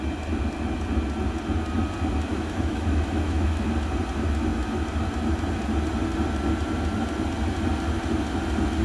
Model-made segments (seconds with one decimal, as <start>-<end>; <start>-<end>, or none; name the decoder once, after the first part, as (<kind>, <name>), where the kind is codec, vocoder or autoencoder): 2.3-3.6 (autoencoder, DAC-VAE)